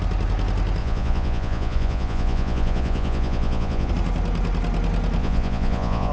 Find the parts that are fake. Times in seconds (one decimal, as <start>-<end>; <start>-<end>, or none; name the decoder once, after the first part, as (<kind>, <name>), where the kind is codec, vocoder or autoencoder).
0.8-3.9 (vocoder, Vocos); 5.2-6.1